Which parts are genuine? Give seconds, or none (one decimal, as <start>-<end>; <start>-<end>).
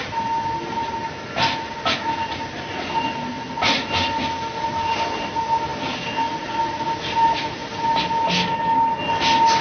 0.0-9.6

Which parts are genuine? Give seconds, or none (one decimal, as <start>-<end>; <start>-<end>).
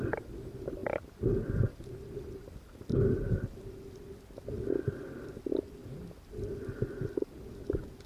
0.0-8.1